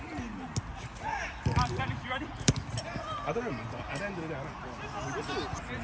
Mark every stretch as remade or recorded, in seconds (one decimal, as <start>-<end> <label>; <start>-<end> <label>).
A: 0.0-0.7 recorded; 0.7-2.5 remade; 2.5-5.8 recorded